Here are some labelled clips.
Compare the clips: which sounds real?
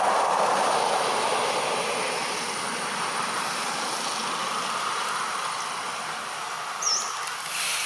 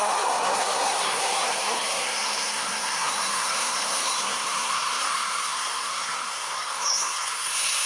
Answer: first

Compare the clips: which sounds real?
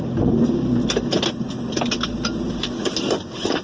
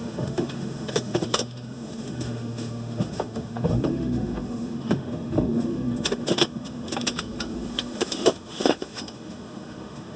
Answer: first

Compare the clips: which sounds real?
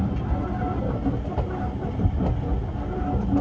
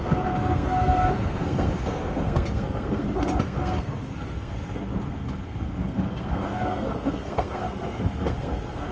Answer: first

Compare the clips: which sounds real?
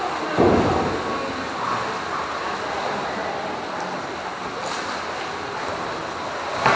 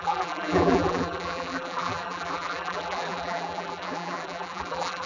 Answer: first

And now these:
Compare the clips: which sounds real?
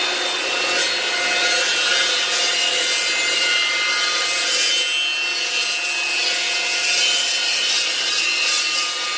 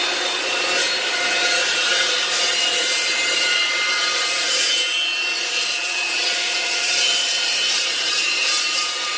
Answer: first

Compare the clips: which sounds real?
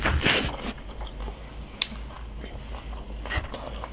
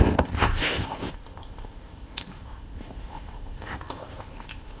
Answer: first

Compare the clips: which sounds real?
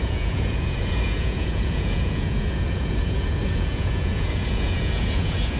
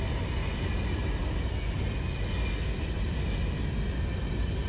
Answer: second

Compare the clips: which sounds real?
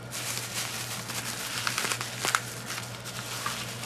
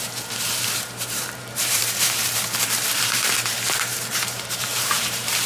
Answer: first